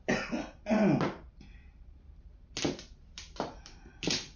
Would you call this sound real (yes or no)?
yes